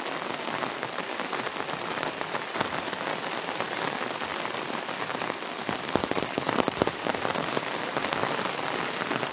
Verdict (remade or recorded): recorded